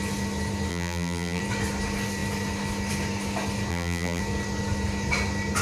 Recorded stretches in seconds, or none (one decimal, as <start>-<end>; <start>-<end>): 0.0-0.7; 1.4-3.7; 4.2-5.6